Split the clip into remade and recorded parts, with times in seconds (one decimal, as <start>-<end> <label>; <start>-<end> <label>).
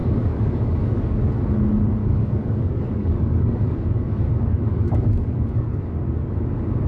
0.0-1.3 remade; 1.3-2.0 recorded; 2.0-5.8 remade; 5.8-6.9 recorded